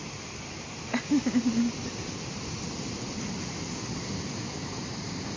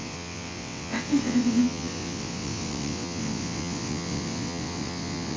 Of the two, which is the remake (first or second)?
second